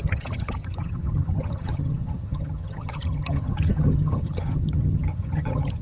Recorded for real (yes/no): no